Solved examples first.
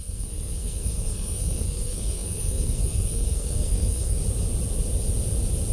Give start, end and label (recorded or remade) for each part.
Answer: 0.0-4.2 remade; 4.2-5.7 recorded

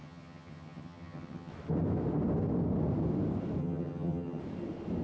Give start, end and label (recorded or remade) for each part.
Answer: 0.0-1.5 remade; 1.5-3.6 recorded; 3.6-4.4 remade; 4.4-5.0 recorded

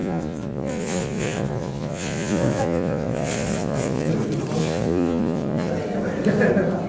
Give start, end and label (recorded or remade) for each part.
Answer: 0.0-4.1 remade; 4.1-4.6 recorded; 4.6-5.7 remade; 5.7-6.9 recorded

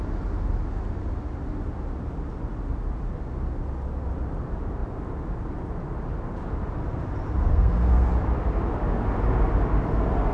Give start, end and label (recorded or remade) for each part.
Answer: 0.0-7.5 recorded; 7.5-8.1 remade; 8.1-10.3 recorded

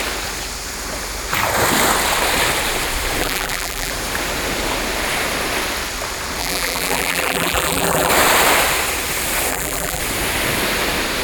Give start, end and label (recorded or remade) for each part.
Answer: 0.0-3.2 recorded; 3.2-3.9 remade; 3.9-6.4 recorded; 6.4-8.1 remade; 8.1-9.5 recorded; 9.5-10.0 remade; 10.0-11.2 recorded

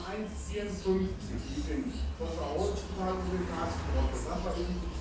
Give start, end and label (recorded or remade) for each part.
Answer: 0.0-5.0 recorded